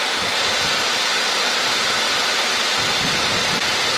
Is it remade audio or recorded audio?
remade